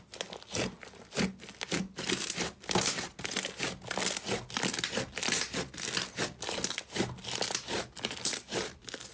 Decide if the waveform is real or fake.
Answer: real